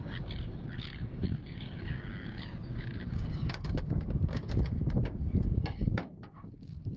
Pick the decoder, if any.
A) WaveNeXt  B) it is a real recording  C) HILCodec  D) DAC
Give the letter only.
D